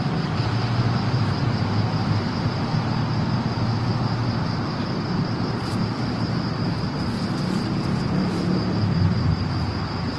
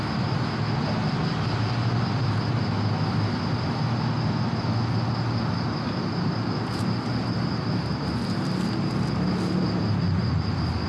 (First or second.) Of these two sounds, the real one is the second